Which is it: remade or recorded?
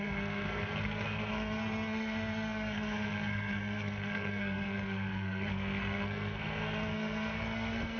remade